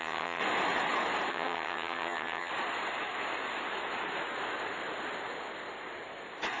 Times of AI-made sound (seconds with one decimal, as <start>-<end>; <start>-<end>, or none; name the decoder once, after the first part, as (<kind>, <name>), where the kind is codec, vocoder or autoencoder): 0.0-0.4 (vocoder, HiFi-GAN); 1.3-2.5